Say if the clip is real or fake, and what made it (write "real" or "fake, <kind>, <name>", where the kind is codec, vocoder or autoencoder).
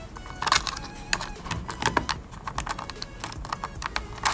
real